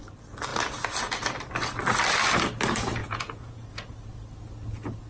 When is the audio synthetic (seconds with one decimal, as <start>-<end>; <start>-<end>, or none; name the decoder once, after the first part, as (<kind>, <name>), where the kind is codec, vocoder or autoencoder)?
3.0-4.1 (vocoder, Vocos)